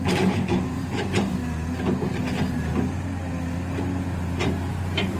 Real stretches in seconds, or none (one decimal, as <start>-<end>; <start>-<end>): 1.4-4.5